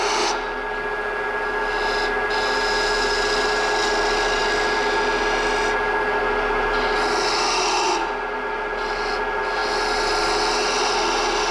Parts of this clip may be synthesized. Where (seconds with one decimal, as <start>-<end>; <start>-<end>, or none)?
none